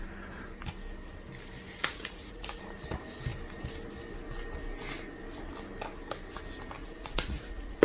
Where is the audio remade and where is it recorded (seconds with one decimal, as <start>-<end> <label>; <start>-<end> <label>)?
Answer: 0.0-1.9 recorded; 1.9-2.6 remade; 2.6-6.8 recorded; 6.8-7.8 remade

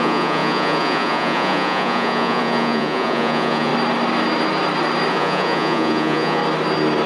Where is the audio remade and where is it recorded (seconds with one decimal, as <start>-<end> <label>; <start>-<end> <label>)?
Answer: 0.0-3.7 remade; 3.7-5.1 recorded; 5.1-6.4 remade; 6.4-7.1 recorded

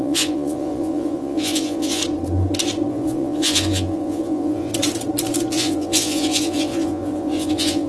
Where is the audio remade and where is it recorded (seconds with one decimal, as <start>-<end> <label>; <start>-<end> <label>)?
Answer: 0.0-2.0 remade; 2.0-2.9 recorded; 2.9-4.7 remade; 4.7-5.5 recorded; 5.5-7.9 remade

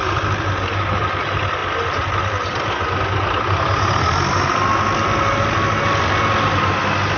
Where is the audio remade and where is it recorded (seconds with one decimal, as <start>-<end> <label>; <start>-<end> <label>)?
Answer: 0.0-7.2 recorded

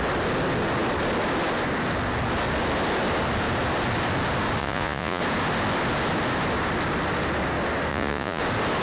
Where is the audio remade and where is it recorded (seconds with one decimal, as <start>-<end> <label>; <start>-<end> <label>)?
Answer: 0.0-4.6 recorded; 4.6-5.2 remade; 5.2-7.9 recorded; 7.9-8.4 remade; 8.4-8.8 recorded

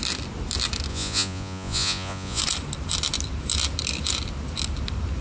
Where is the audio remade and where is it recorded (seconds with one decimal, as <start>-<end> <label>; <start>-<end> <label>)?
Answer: 0.0-0.9 recorded; 0.9-2.4 remade; 2.4-5.2 recorded

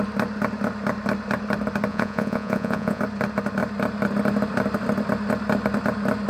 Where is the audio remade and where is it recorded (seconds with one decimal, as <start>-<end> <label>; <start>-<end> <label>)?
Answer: 0.0-1.9 recorded; 1.9-3.0 remade; 3.0-6.3 recorded